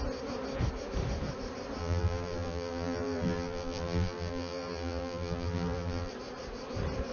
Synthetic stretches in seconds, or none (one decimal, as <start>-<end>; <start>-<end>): 1.8-6.1